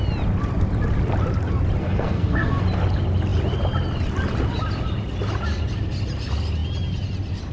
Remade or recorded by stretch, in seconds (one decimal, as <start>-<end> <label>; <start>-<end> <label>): 0.0-1.8 recorded; 1.8-2.6 remade; 2.6-7.5 recorded